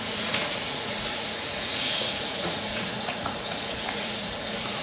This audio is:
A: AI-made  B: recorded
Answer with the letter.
A